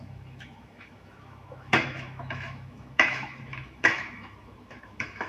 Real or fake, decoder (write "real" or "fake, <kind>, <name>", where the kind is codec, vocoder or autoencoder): fake, autoencoder, DAC-VAE